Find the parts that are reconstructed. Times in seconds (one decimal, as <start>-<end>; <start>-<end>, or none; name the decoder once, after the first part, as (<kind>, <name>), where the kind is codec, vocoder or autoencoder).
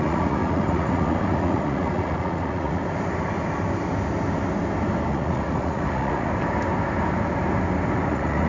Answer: 0.0-2.8 (vocoder, Vocos); 5.1-6.3; 8.1-8.5